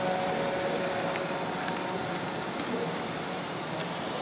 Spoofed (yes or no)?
no